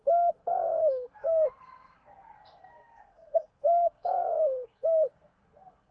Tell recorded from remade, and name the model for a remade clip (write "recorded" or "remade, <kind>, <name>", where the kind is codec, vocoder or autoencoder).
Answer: remade, codec, SNAC